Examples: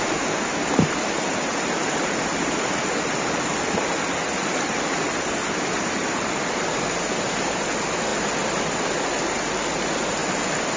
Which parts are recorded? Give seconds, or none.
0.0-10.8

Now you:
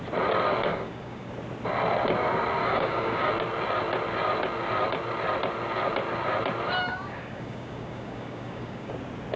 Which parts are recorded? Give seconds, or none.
0.0-0.7; 1.3-2.6; 3.3-6.9; 8.9-9.4

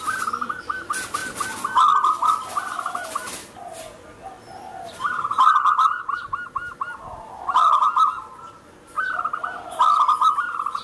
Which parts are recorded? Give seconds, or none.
0.0-10.8

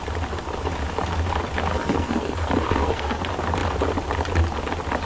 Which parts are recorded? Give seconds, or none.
0.0-1.7; 3.2-5.1

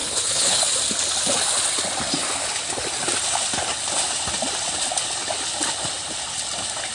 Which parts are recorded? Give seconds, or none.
0.6-6.9

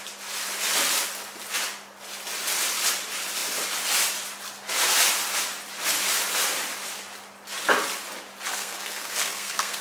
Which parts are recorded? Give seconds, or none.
0.0-8.5

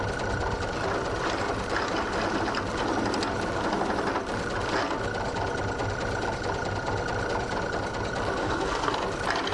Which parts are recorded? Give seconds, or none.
0.0-8.4; 8.9-9.5